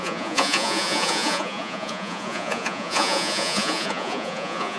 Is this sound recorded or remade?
remade